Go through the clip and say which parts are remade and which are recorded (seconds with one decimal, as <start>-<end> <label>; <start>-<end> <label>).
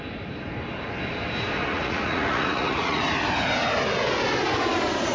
0.0-1.6 recorded; 1.6-3.0 remade; 3.0-5.1 recorded